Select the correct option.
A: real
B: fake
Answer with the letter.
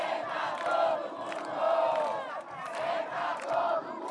B